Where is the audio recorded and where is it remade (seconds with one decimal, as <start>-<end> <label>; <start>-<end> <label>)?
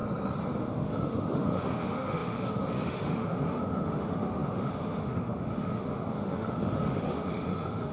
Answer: 0.0-0.6 recorded; 0.6-7.9 remade